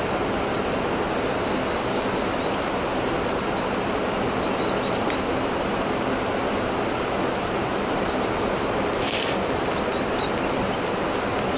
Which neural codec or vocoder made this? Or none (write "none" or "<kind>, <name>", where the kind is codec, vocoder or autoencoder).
none